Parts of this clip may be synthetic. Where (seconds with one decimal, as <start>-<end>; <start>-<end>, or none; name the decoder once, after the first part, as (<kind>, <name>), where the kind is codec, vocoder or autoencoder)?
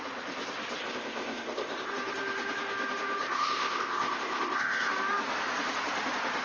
0.8-1.9 (codec, ZipCodec); 3.2-4.9